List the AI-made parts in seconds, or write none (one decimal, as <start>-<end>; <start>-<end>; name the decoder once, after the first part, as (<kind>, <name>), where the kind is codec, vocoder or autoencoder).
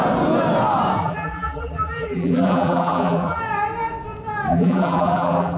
1.0-3.4 (vocoder, BigVGAN v2); 4.5-5.6